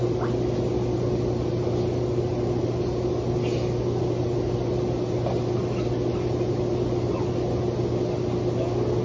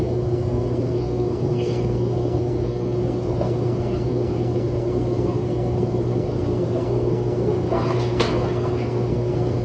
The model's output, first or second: second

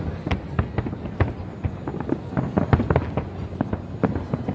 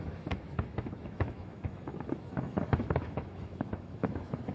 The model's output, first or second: second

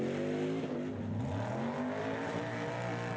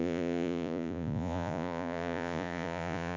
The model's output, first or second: second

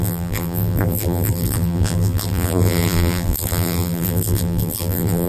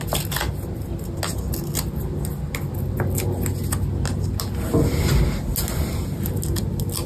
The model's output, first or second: first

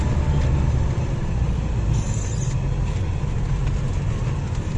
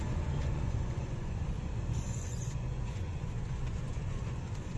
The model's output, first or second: second